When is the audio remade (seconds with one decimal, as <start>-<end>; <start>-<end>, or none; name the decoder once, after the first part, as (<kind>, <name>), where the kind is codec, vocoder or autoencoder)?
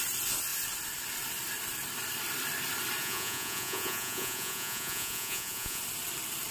3.0-5.8 (vocoder, Vocos)